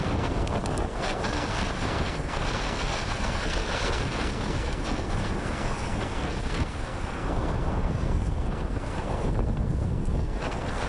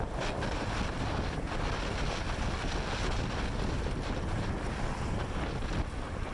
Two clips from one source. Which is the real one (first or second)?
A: second